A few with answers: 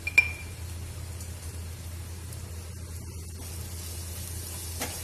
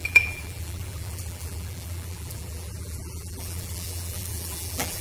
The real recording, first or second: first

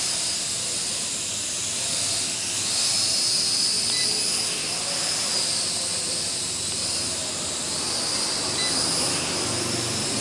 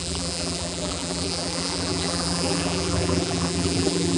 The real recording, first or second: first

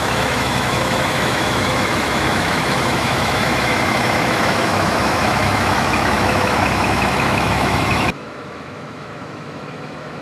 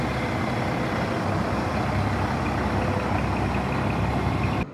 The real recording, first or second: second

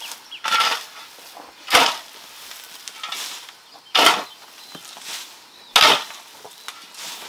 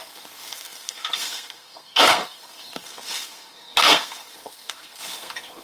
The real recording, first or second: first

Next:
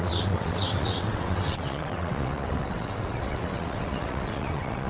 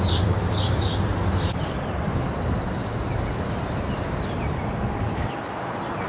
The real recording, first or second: second